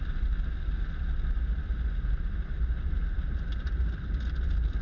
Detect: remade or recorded recorded